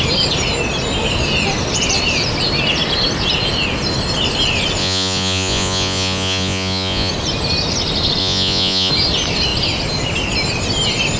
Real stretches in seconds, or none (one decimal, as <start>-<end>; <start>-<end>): 0.0-4.8; 7.1-8.2; 8.9-11.2